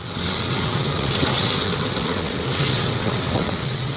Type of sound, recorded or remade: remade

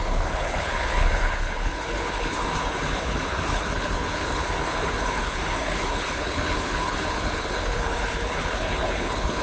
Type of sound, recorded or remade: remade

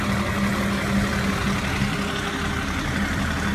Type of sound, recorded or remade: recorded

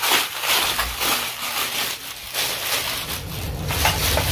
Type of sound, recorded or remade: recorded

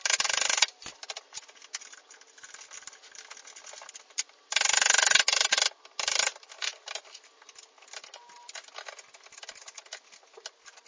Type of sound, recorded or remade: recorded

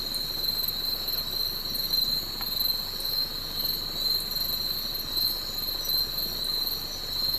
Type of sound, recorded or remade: recorded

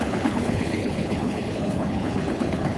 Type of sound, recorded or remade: remade